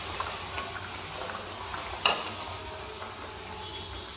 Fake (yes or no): no